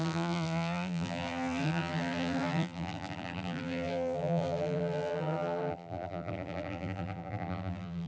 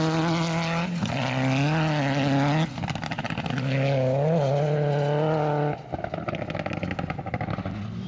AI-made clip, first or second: first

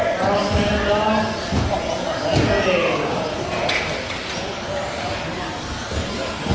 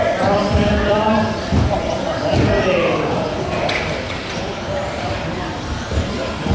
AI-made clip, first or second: second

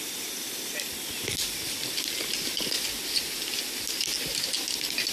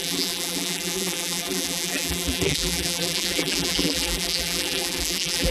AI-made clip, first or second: second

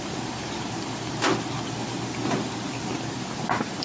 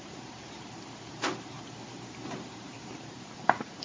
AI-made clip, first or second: second